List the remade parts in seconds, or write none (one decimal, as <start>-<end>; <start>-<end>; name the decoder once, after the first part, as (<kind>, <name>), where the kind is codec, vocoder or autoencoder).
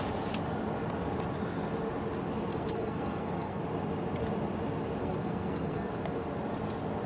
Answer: 2.5-3.6 (codec, SNAC); 5.0-5.9